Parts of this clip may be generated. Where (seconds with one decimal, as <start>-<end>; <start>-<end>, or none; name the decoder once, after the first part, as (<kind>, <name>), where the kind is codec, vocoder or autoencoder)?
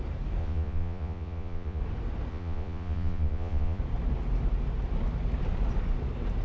0.4-1.8 (vocoder, Vocos); 2.3-3.8